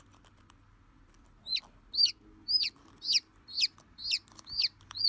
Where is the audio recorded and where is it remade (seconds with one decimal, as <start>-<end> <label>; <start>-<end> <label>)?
0.0-5.1 recorded